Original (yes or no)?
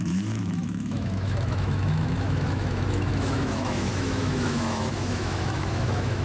no